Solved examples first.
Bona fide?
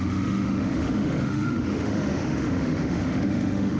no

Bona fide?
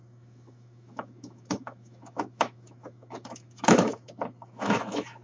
no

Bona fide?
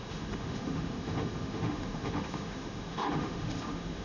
no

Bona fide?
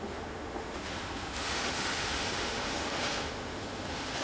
no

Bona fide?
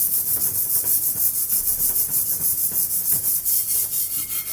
yes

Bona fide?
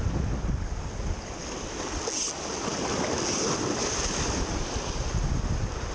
yes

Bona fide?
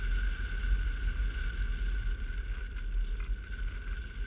yes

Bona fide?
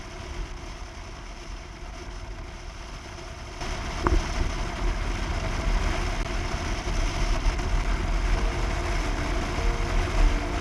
yes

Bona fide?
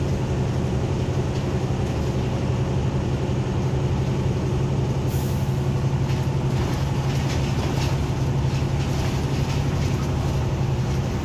yes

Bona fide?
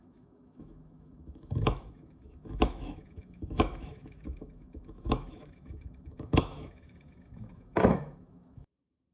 no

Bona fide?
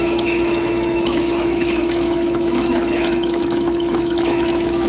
no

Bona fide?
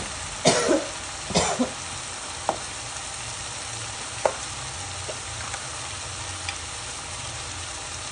yes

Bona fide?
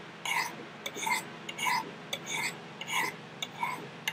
yes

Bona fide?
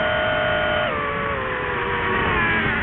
yes